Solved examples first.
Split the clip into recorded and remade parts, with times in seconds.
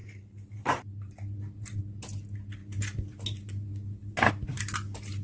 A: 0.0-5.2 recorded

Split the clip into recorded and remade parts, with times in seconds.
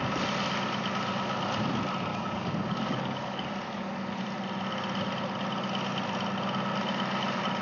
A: 0.0-2.1 recorded; 2.1-4.2 remade; 4.2-7.6 recorded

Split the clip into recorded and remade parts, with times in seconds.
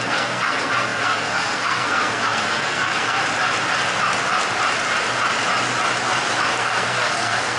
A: 0.0-3.2 remade; 3.2-6.5 recorded; 6.5-7.6 remade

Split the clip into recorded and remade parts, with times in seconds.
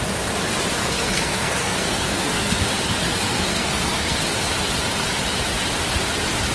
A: 0.0-0.8 recorded; 0.8-4.2 remade; 4.2-6.5 recorded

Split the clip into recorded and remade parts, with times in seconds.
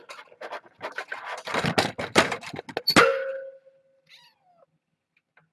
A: 0.0-5.5 recorded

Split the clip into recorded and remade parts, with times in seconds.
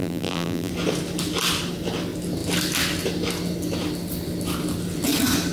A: 0.0-0.7 remade; 0.7-5.5 recorded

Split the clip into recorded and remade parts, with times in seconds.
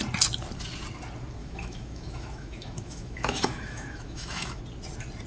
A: 0.0-1.4 recorded; 1.4-4.6 remade; 4.6-5.3 recorded